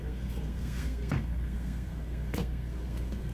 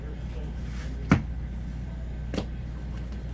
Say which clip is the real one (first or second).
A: second